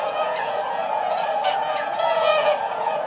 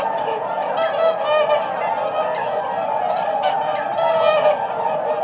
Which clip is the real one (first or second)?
second